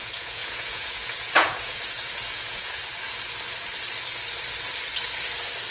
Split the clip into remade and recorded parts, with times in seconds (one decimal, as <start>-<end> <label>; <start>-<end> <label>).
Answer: 0.0-2.8 remade; 2.8-5.7 recorded